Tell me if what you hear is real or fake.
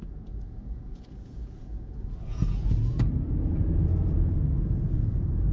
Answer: fake